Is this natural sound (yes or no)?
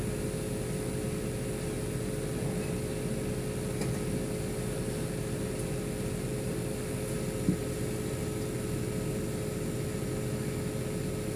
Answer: yes